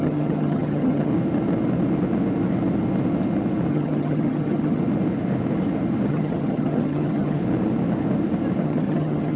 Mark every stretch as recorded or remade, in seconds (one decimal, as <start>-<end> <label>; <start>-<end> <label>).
0.0-1.1 remade; 1.1-3.7 recorded; 3.7-4.8 remade; 4.8-6.1 recorded; 6.1-7.4 remade; 7.4-8.6 recorded; 8.6-9.4 remade